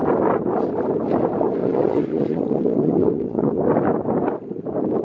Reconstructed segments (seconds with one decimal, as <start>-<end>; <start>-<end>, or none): 1.6-3.6